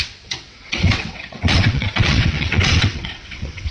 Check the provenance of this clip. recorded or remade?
remade